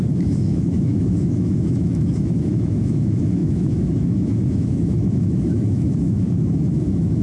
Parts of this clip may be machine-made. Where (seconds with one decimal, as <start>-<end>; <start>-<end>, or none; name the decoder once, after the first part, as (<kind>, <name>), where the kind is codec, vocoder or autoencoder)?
0.0-7.2 (autoencoder, DAC-VAE)

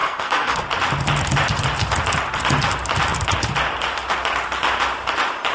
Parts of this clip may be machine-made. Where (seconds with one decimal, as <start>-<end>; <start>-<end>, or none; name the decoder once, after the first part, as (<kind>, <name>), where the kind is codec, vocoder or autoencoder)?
0.0-0.6 (codec, SNAC)

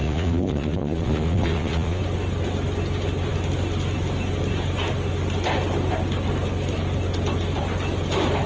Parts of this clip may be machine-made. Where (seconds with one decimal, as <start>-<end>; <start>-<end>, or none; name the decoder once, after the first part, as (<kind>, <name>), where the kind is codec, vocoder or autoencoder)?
0.0-2.0 (vocoder, Vocos)

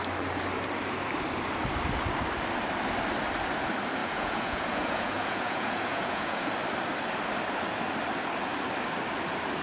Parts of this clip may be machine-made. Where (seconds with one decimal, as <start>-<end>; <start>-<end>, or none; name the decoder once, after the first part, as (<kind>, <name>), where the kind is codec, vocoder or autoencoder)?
4.0-6.5 (vocoder, Vocos)